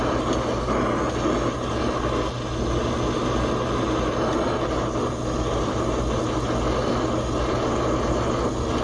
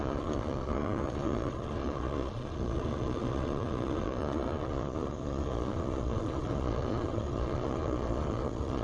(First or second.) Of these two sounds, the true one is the first